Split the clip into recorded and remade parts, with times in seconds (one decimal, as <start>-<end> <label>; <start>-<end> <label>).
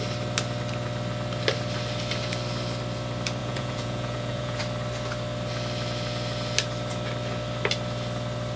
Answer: 0.0-3.4 recorded; 3.4-4.6 remade; 4.6-8.6 recorded